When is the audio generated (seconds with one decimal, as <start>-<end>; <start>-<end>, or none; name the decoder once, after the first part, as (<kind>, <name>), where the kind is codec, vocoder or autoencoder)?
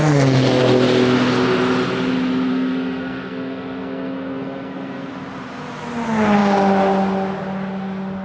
0.0-0.6 (codec, SNAC); 2.5-5.1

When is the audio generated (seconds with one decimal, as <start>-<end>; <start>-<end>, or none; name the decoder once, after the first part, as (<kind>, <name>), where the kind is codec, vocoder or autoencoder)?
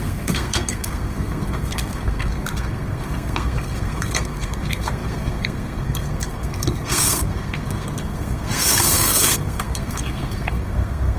0.0-11.2 (codec, SNAC)